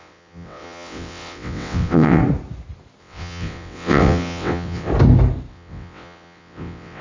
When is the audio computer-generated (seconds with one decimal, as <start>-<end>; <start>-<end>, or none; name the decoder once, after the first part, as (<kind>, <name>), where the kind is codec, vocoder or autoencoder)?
0.0-2.2 (vocoder, WaveNeXt); 3.0-4.9; 5.5-7.0